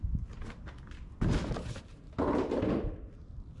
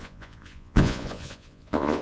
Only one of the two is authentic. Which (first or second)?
first